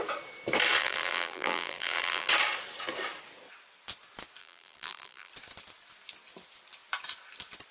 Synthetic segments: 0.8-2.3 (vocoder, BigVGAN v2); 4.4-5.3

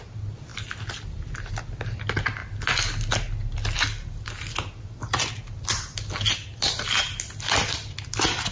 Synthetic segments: none

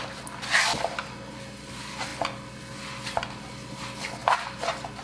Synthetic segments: 4.2-5.0 (vocoder, BigVGAN v2)